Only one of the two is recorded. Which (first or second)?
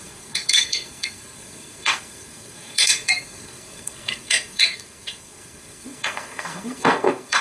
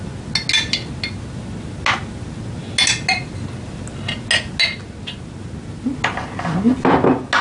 second